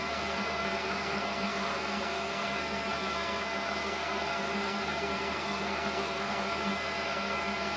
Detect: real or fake fake